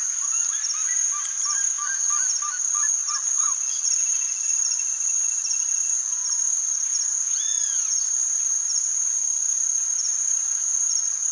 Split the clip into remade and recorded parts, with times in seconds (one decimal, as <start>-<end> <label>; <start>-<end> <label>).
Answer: 0.0-3.0 recorded; 3.0-4.5 remade; 4.5-11.3 recorded